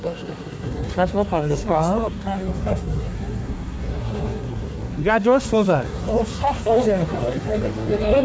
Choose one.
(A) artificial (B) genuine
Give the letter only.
A